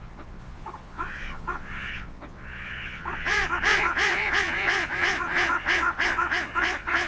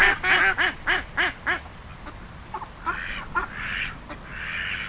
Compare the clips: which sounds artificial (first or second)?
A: first